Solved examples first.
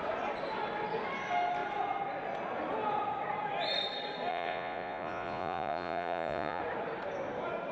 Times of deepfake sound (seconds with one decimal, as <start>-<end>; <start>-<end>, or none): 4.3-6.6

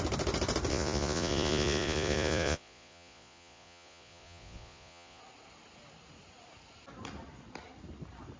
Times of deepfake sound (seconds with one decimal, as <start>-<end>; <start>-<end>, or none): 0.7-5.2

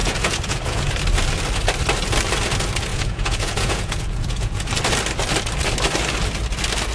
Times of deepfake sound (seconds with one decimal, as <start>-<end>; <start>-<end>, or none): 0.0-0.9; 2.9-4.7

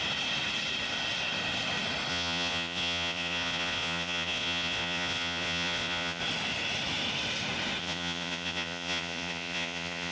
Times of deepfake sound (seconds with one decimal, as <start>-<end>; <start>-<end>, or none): 2.1-6.2; 7.8-10.1

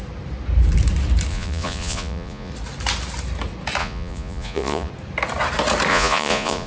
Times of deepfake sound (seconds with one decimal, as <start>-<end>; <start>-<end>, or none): 1.3-2.5; 3.8-4.9; 5.9-6.7

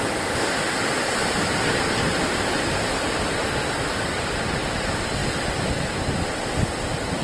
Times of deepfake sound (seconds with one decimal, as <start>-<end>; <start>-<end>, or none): none